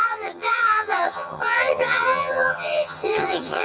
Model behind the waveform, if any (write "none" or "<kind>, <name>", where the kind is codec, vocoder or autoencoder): vocoder, HiFi-GAN